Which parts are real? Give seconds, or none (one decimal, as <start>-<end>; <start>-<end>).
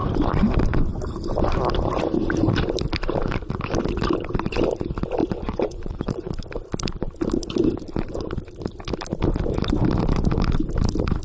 0.0-5.2; 6.3-11.2